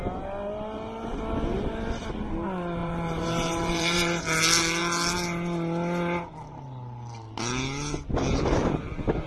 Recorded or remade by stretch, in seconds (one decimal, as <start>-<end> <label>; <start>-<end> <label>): 0.0-2.8 recorded; 2.8-4.2 remade; 4.2-9.3 recorded